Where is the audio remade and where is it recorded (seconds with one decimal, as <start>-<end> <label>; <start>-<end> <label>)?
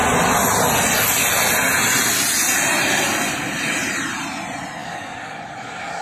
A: 0.0-4.8 recorded; 4.8-6.0 remade